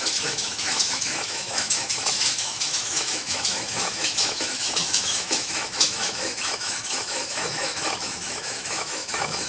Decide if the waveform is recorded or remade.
remade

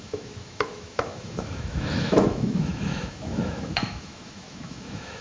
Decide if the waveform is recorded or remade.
remade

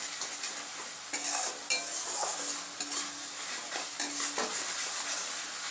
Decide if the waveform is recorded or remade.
recorded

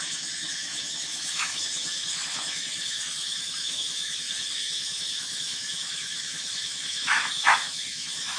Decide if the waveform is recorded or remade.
remade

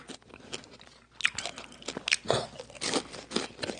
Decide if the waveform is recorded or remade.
recorded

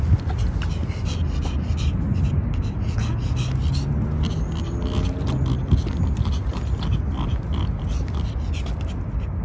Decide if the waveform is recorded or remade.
recorded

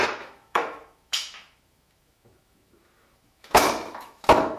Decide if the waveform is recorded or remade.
remade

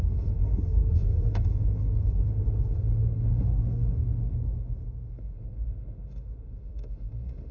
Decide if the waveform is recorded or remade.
remade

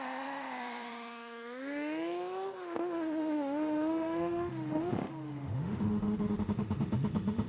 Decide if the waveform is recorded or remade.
remade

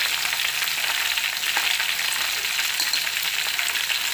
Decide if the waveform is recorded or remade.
recorded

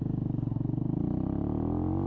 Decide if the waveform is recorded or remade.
recorded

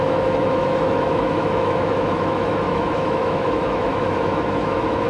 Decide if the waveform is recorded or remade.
remade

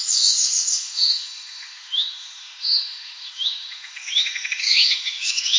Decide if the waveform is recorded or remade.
remade